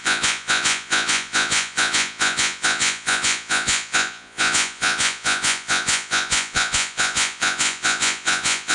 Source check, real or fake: fake